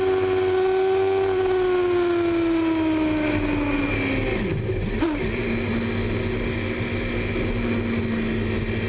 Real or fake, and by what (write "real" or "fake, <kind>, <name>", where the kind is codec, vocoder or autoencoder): real